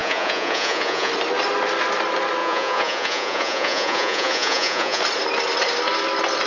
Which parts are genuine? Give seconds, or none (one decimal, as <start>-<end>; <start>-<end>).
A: 1.1-2.4; 5.0-6.5